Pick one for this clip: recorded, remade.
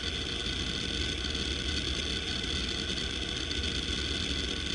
recorded